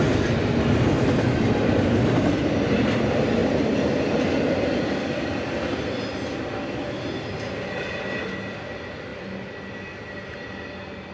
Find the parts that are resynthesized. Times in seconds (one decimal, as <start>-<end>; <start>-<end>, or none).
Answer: none